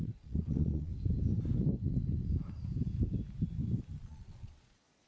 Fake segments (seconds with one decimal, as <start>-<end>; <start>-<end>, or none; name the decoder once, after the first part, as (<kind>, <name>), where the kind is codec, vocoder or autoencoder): 0.0-0.9 (vocoder, Vocos); 4.0-5.1